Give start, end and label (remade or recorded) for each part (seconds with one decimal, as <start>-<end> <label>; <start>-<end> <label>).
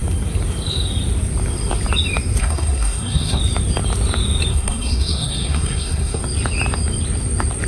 0.0-2.4 recorded; 2.4-3.4 remade; 3.4-4.5 recorded; 4.5-6.2 remade; 6.2-7.7 recorded